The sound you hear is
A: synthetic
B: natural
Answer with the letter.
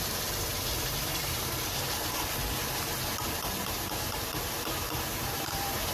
A